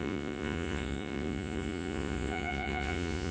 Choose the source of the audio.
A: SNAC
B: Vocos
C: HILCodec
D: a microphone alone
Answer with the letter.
B